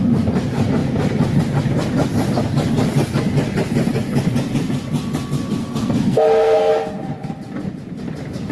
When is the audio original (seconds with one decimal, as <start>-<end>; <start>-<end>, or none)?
0.0-5.6; 6.7-8.5